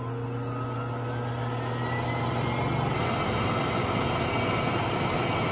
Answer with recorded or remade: recorded